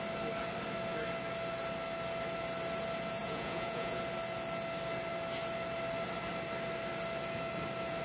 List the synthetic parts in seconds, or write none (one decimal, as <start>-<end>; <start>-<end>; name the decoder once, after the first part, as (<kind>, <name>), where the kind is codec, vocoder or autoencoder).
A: 3.2-4.0 (vocoder, Vocos)